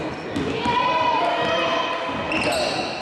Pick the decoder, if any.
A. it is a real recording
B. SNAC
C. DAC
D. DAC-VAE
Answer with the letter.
A